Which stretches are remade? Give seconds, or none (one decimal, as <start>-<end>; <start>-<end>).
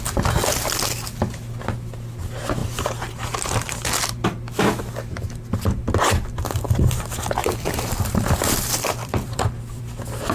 7.4-9.8